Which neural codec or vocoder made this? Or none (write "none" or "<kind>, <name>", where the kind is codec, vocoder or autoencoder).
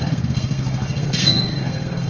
codec, SNAC